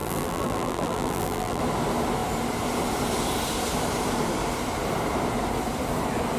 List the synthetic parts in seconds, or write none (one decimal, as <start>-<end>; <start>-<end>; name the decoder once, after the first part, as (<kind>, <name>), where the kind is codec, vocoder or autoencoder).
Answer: 0.0-1.6 (vocoder, BigVGAN v2)